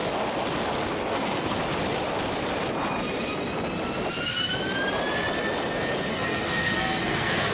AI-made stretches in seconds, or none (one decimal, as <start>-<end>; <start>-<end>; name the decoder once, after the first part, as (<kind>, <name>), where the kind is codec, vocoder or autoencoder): 1.1-1.6 (codec, SNAC); 6.1-7.5